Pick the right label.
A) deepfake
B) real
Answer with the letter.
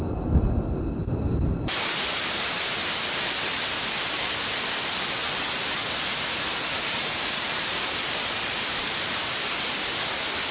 B